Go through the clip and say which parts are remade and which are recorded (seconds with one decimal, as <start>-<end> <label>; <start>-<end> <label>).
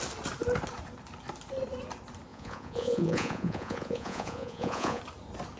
0.0-2.3 recorded; 2.3-5.0 remade; 5.0-5.6 recorded